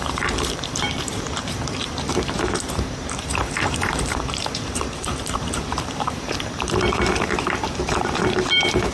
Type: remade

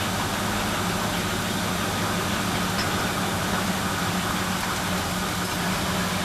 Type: recorded